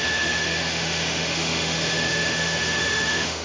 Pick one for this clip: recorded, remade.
remade